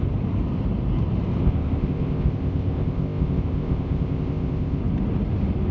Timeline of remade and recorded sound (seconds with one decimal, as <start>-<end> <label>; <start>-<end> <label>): 0.0-1.4 recorded; 1.4-4.8 remade; 4.8-5.7 recorded